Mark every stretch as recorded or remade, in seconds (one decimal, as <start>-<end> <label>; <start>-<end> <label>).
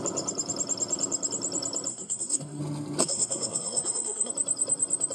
0.0-1.9 recorded; 1.9-2.6 remade; 2.6-3.0 recorded; 3.0-4.3 remade; 4.3-5.1 recorded